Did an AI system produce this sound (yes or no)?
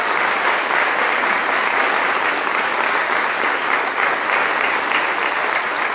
no